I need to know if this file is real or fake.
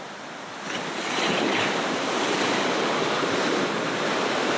real